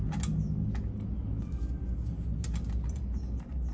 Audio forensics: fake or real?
real